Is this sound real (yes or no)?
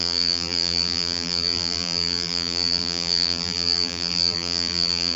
no